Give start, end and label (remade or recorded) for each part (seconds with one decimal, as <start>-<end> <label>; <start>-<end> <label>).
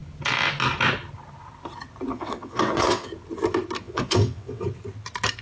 0.0-2.1 recorded; 2.1-3.1 remade; 3.1-3.8 recorded; 3.8-4.6 remade; 4.6-5.4 recorded